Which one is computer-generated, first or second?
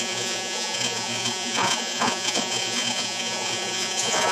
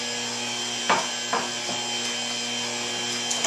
first